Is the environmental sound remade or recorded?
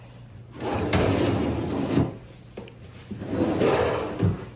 recorded